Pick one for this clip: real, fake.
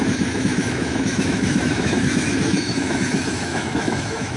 fake